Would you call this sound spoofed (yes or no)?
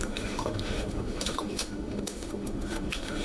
yes